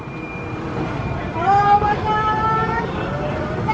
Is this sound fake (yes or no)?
yes